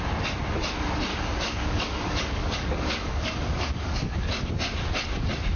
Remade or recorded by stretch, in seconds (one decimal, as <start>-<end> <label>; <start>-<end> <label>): 0.0-1.1 recorded; 1.1-4.5 remade; 4.5-5.6 recorded